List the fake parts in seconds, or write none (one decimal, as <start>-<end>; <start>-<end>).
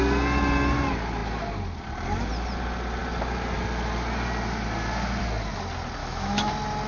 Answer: 6.0-6.5